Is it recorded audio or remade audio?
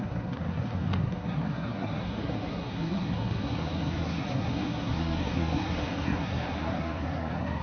remade